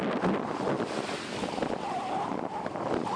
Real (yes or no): yes